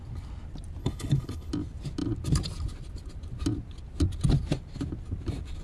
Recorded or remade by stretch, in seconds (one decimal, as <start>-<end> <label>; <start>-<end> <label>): 0.0-0.8 recorded; 0.8-1.5 remade; 1.5-5.6 recorded

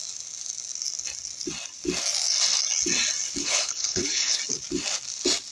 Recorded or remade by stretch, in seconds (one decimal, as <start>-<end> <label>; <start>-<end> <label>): 0.0-3.4 recorded; 3.4-4.4 remade; 4.4-5.5 recorded

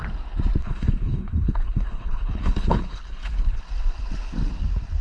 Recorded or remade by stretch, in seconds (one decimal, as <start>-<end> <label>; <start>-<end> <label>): 0.0-0.6 recorded; 0.6-3.6 remade; 3.6-5.0 recorded

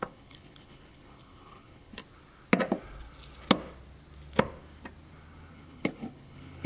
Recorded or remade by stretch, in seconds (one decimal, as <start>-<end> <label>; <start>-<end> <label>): 0.0-2.0 remade; 2.0-5.5 recorded; 5.5-6.7 remade

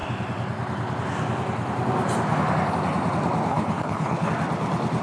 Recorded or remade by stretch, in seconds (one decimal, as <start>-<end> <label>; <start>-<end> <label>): 0.0-3.5 recorded; 3.5-4.3 remade; 4.3-5.0 recorded

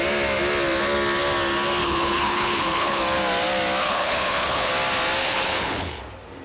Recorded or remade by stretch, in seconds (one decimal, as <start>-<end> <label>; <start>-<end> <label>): 0.0-1.8 recorded; 1.8-3.0 remade; 3.0-3.8 recorded; 3.8-4.7 remade; 4.7-5.2 recorded; 5.2-6.0 remade; 6.0-6.4 recorded